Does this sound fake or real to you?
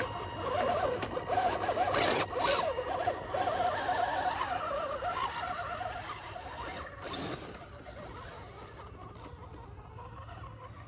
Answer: real